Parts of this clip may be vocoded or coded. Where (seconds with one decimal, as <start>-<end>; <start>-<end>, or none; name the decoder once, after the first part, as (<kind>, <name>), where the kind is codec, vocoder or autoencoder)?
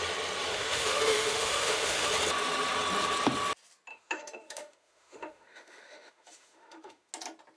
0.5-2.1 (autoencoder, DAC-VAE); 3.9-7.1